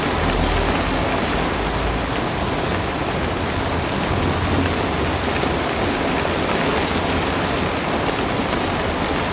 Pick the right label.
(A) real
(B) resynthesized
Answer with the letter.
A